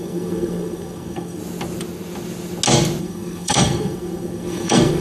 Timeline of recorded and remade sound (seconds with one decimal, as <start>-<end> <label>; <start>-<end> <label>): 0.0-1.4 remade; 1.4-3.0 recorded; 3.0-5.0 remade